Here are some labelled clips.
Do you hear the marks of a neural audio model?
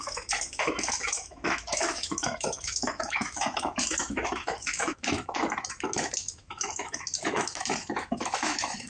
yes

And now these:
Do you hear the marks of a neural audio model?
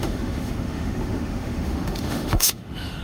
yes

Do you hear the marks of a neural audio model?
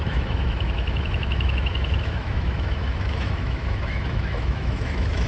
yes